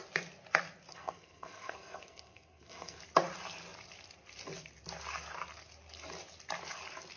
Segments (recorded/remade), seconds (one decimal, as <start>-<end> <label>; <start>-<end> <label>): 0.0-0.9 recorded; 0.9-3.0 remade; 3.0-7.2 recorded